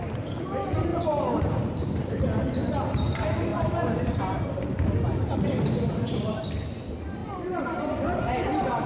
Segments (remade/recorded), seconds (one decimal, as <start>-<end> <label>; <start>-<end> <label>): 0.0-0.9 recorded; 0.9-2.2 remade; 2.2-3.5 recorded; 3.5-6.4 remade; 6.4-7.2 recorded; 7.2-8.9 remade